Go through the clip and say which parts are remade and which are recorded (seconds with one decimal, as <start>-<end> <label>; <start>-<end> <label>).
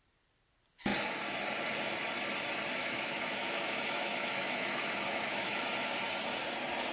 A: 0.0-2.8 recorded; 2.8-5.6 remade; 5.6-6.9 recorded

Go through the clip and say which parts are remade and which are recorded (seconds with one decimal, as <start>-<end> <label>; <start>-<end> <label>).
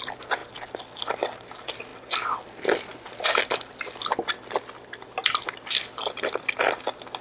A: 0.0-7.2 recorded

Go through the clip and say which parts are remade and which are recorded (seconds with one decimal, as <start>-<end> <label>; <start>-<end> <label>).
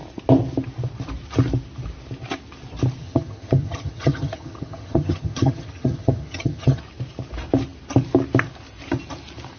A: 0.0-3.0 recorded; 3.0-6.8 remade; 6.8-9.6 recorded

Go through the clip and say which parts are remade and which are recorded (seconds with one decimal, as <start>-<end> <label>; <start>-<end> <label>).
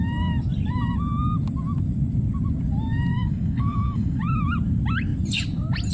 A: 0.0-3.1 recorded; 3.1-4.2 remade; 4.2-5.9 recorded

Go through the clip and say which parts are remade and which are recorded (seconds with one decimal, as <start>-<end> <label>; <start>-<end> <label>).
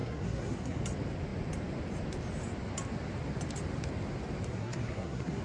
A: 0.0-0.8 remade; 0.8-4.5 recorded; 4.5-5.4 remade